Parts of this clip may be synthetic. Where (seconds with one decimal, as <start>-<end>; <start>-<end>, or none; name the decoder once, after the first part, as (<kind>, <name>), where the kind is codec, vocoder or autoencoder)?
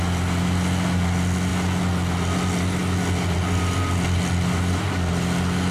none